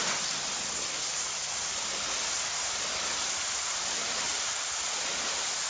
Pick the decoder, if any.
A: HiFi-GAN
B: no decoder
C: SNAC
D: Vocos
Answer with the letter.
B